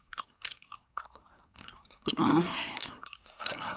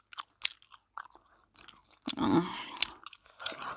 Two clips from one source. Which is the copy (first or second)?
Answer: first